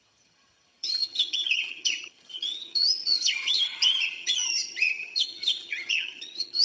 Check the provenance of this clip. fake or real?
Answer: fake